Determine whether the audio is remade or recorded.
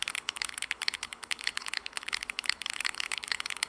remade